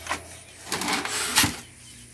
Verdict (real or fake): real